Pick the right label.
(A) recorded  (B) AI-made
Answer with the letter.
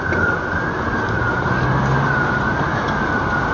A